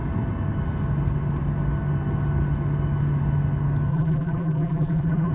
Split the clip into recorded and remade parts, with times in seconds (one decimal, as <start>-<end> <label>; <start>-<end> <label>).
0.0-3.9 recorded; 3.9-5.3 remade

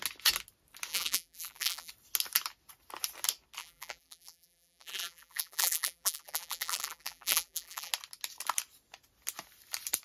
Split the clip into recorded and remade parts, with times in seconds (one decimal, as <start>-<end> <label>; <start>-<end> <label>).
0.0-0.9 recorded; 0.9-1.9 remade; 1.9-3.6 recorded; 3.6-7.9 remade; 7.9-10.0 recorded

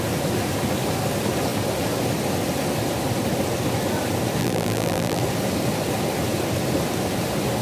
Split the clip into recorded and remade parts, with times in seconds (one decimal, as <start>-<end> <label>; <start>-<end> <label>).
0.0-4.4 recorded; 4.4-5.2 remade; 5.2-7.6 recorded

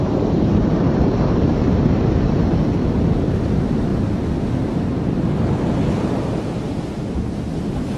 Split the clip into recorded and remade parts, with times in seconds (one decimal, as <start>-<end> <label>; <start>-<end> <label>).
0.0-3.9 remade; 3.9-7.6 recorded; 7.6-8.0 remade

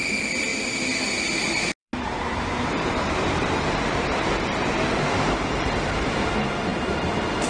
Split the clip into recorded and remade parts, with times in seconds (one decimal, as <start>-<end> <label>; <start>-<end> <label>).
0.0-1.8 recorded; 1.8-6.3 remade; 6.3-6.7 recorded; 6.7-7.5 remade